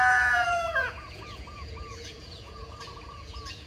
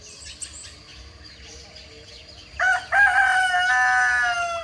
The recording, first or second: second